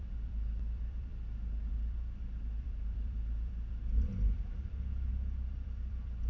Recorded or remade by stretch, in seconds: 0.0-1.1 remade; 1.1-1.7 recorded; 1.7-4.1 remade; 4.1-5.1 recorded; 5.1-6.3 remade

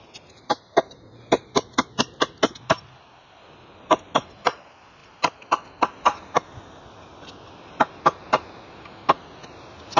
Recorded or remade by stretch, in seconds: 0.0-10.0 recorded

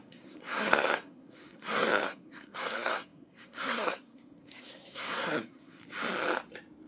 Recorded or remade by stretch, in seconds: 0.0-5.8 remade; 5.8-6.9 recorded

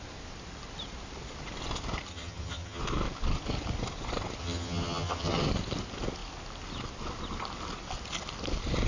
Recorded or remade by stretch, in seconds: 0.0-2.1 recorded; 2.1-2.8 remade; 2.8-4.4 recorded; 4.4-5.5 remade; 5.5-8.9 recorded